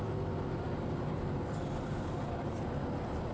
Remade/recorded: recorded